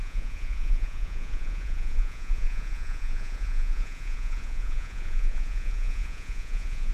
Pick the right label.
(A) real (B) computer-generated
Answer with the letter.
B